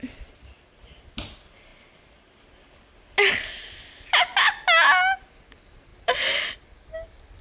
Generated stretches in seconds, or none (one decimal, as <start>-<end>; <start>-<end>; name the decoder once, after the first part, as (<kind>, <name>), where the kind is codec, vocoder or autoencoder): none